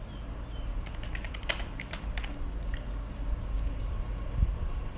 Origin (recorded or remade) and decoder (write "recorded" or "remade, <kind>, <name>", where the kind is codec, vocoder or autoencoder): recorded